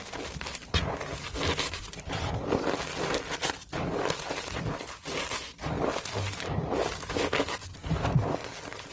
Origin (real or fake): real